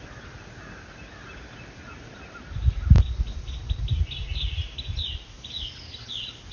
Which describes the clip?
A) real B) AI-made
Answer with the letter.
A